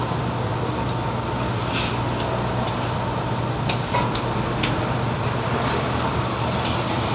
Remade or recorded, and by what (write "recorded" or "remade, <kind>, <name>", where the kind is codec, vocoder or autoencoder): recorded